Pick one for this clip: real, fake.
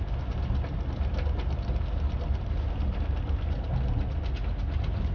real